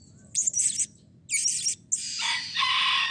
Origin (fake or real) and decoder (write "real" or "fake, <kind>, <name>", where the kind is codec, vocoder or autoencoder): real